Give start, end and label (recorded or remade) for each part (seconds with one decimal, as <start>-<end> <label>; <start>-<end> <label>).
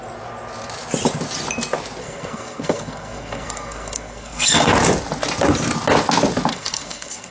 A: 0.0-2.0 recorded; 2.0-4.7 remade; 4.7-6.5 recorded; 6.5-7.3 remade